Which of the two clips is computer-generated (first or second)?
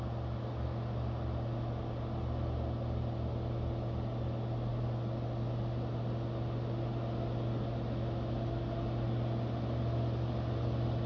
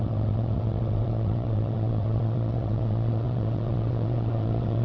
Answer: second